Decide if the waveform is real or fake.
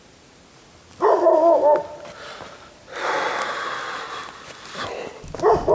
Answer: real